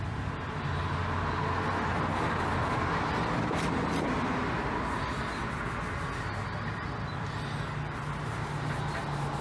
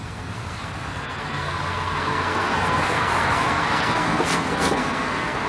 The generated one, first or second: second